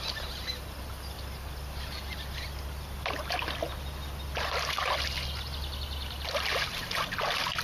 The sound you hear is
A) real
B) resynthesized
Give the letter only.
A